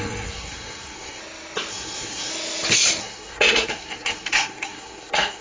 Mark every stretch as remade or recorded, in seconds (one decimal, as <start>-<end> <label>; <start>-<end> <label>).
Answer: 0.0-1.2 remade; 1.2-1.7 recorded; 1.7-2.3 remade; 2.3-3.0 recorded; 3.0-5.4 remade